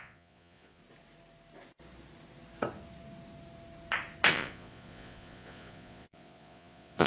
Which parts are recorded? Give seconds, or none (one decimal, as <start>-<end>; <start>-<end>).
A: 0.8-4.3